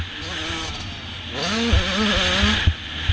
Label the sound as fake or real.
real